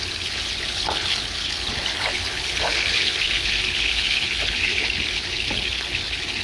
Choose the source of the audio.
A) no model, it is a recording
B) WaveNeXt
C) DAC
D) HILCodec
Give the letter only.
D